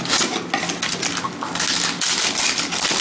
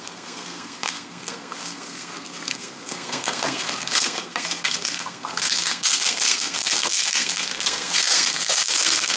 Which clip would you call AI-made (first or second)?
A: second